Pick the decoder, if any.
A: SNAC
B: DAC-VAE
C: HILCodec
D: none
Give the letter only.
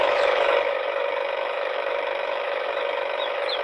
B